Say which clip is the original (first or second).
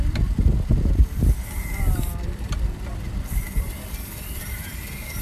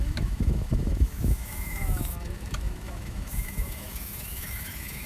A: first